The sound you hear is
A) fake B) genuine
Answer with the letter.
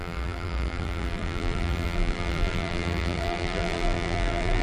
A